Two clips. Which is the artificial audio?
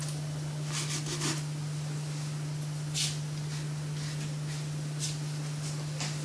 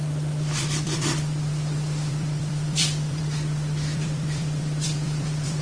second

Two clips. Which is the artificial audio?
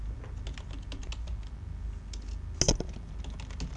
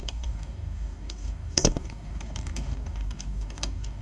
second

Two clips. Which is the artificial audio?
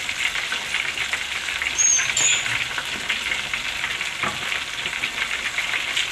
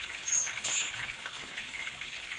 second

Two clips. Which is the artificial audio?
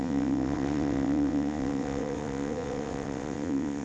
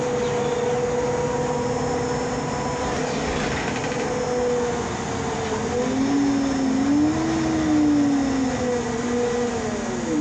first